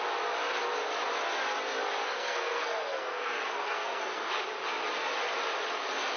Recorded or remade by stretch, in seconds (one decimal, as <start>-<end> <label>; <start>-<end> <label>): 0.0-2.0 recorded; 2.0-4.4 remade; 4.4-6.2 recorded